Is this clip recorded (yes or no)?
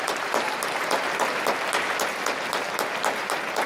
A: no